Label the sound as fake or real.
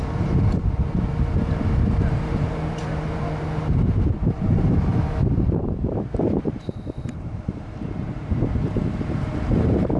fake